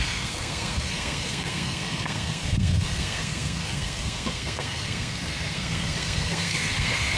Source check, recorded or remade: remade